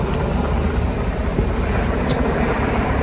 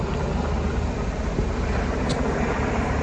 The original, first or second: second